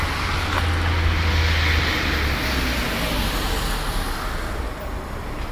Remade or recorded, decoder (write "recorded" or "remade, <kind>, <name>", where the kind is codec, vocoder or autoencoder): recorded